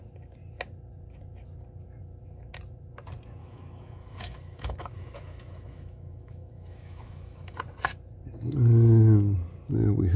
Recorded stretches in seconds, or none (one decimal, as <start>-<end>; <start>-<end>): 0.0-3.4; 7.6-10.2